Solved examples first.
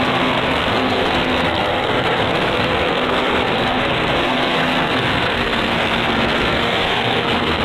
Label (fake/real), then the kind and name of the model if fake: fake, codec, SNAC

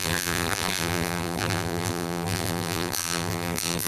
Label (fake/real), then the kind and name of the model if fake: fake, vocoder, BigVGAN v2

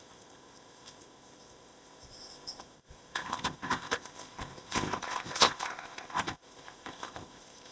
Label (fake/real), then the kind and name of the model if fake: fake, codec, ZipCodec